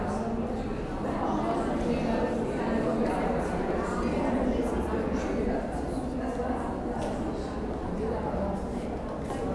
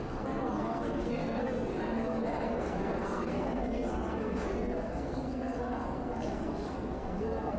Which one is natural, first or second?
first